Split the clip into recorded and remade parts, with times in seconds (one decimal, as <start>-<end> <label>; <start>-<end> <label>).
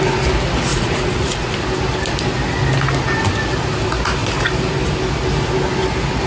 0.0-0.7 recorded; 0.7-1.5 remade; 1.5-6.3 recorded